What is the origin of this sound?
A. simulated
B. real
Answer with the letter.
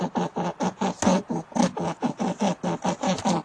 B